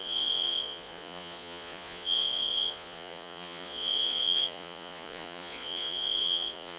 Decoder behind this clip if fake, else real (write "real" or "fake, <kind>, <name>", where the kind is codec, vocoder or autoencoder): fake, vocoder, Vocos